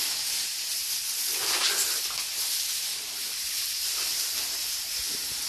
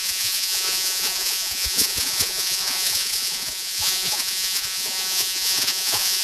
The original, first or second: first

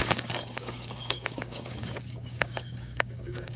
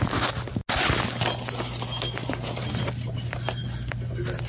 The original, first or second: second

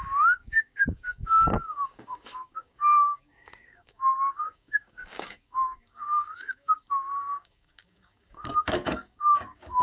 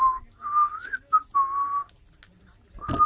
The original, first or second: second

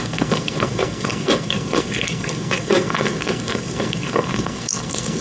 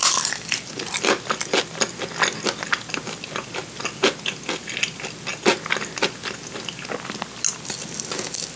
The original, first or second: second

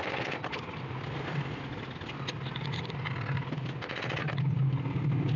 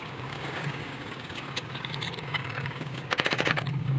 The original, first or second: first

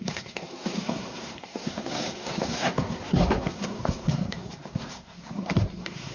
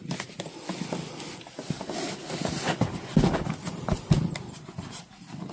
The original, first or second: second